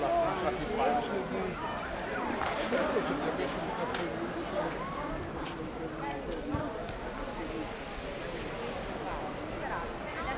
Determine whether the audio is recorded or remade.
recorded